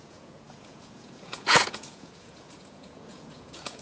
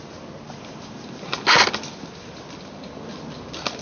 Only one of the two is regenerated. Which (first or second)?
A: first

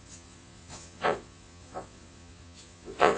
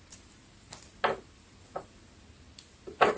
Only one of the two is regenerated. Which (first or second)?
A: first